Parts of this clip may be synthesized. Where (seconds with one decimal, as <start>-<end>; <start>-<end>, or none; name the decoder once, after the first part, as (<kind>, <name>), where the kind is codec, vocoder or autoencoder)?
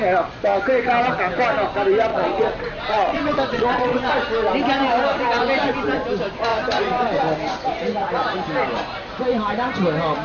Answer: 2.1-4.1 (vocoder, WaveNeXt)